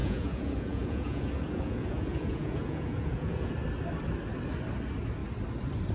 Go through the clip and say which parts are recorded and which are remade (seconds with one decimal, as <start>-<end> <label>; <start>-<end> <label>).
0.0-3.5 remade; 3.5-5.9 recorded